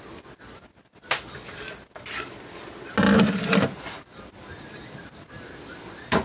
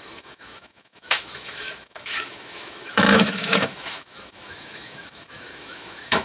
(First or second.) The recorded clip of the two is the first